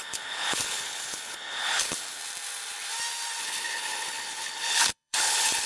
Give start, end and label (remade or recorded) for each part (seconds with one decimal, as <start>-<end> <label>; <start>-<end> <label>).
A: 0.0-2.2 remade; 2.2-3.4 recorded; 3.4-5.7 remade

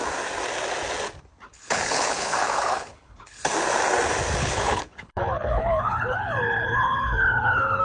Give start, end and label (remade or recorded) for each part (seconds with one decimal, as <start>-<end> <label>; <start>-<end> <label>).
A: 0.0-1.5 recorded; 1.5-3.4 remade; 3.4-4.4 recorded; 4.4-7.8 remade

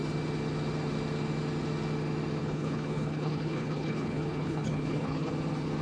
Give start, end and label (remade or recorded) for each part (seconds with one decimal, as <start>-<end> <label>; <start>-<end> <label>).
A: 0.0-2.4 recorded; 2.4-5.3 remade; 5.3-5.8 recorded

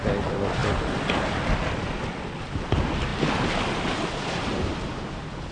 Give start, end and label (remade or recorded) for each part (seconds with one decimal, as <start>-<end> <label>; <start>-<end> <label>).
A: 0.0-5.5 recorded

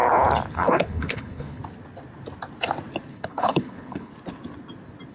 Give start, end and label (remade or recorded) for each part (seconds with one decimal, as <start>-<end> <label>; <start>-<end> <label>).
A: 0.0-0.5 recorded; 0.5-1.6 remade; 1.6-3.1 recorded; 3.1-4.1 remade; 4.1-5.1 recorded